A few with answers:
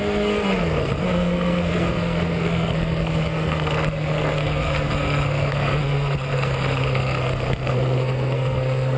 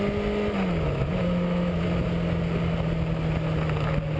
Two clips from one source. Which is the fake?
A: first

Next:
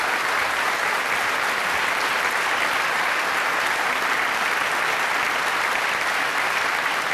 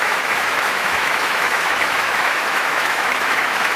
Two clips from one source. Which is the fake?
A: second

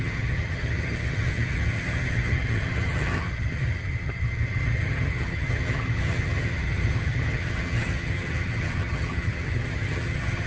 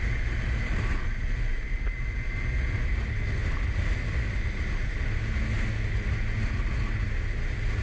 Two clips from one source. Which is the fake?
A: first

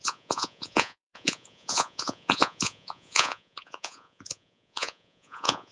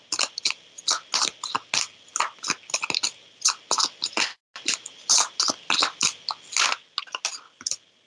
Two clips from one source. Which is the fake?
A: first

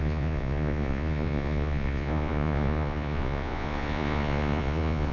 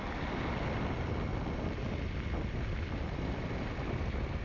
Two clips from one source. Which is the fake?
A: first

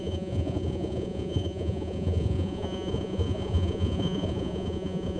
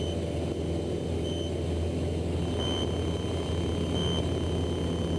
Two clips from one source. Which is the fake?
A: first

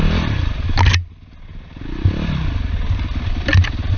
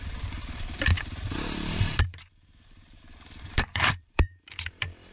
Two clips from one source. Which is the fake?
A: second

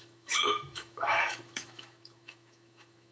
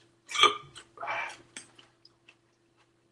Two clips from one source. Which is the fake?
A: first